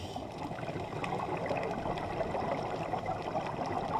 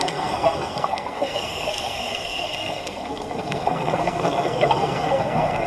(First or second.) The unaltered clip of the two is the first